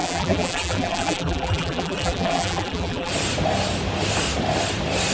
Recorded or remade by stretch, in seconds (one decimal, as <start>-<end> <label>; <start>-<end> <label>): 0.0-3.1 remade; 3.1-5.1 recorded

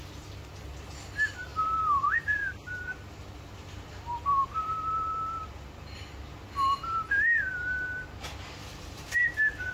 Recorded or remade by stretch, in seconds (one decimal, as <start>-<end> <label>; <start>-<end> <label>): 0.0-1.5 recorded; 1.5-5.4 remade; 5.4-6.8 recorded; 6.8-7.5 remade; 7.5-8.6 recorded; 8.6-9.7 remade

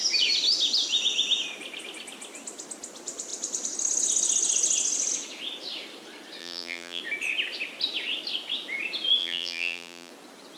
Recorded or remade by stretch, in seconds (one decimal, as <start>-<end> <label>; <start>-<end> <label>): 0.0-6.4 recorded; 6.4-7.0 remade; 7.0-9.2 recorded; 9.2-10.1 remade; 10.1-10.6 recorded

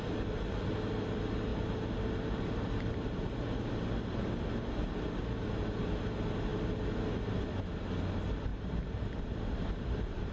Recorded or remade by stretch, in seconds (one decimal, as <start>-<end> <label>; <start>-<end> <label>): 0.0-8.5 recorded; 8.5-10.3 remade

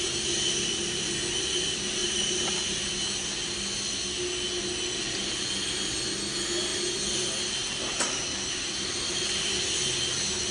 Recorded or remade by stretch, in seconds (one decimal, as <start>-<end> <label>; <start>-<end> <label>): 0.0-2.0 recorded; 2.0-2.8 remade; 2.8-10.5 recorded

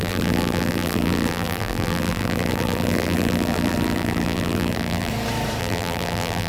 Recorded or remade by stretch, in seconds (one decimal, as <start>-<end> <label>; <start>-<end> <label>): 0.0-5.1 remade; 5.1-5.6 recorded; 5.6-6.5 remade